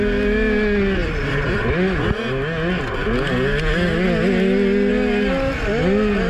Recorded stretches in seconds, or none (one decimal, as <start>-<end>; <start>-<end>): 0.0-1.0; 2.0-6.3